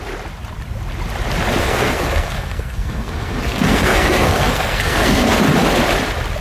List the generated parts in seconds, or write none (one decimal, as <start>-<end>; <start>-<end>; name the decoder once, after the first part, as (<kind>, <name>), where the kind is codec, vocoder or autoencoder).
1.6-5.4 (codec, SNAC)